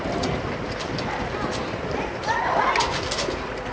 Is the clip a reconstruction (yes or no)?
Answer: no